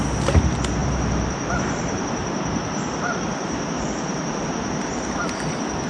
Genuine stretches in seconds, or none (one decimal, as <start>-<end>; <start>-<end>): 0.0-0.8; 4.3-5.9